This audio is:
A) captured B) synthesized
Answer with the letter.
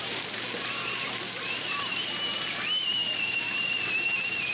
B